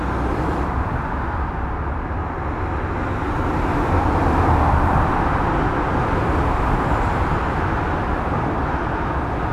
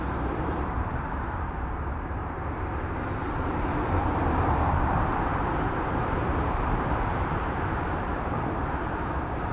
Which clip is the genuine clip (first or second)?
first